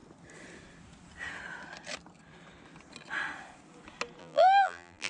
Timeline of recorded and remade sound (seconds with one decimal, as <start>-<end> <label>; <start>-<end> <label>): 0.0-4.2 recorded; 4.2-5.1 remade